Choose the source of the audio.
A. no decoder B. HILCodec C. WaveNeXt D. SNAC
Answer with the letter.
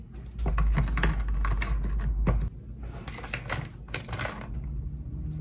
A